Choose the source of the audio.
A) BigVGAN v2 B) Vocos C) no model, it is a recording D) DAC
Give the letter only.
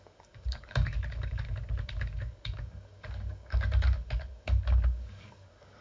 D